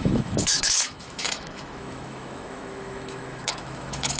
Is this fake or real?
fake